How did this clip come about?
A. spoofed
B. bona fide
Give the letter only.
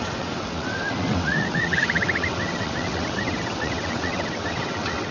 A